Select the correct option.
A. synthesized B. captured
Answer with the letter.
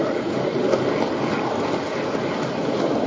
B